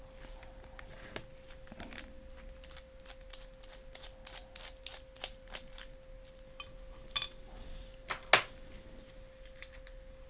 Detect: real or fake real